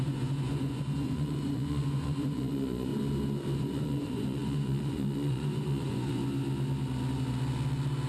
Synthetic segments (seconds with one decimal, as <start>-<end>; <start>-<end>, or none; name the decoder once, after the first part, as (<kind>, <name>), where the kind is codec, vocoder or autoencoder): 0.0-2.9 (vocoder, Vocos); 3.6-6.2